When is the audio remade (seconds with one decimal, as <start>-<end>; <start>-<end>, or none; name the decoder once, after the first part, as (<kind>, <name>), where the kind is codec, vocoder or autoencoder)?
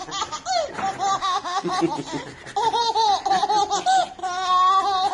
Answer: 1.2-1.7 (autoencoder, DAC-VAE)